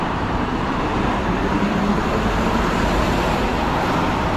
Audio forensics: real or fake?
fake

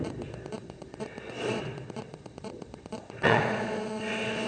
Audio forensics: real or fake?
fake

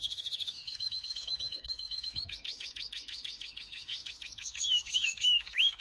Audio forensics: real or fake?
fake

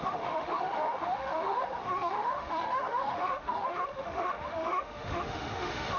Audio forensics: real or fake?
fake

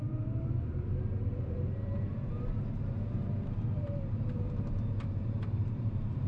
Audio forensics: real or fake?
fake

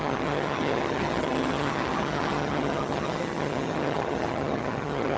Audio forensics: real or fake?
fake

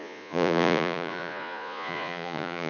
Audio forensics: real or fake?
fake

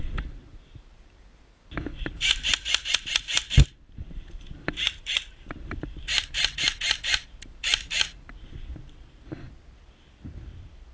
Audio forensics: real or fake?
real